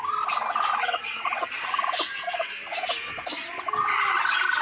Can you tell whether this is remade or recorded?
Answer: recorded